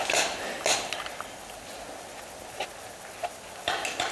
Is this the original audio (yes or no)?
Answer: yes